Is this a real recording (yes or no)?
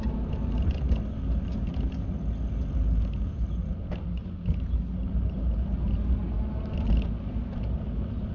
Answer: yes